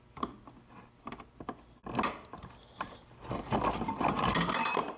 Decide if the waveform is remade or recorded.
recorded